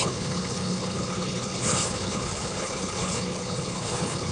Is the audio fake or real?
fake